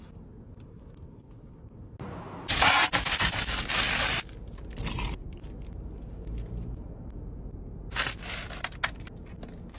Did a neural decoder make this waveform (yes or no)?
no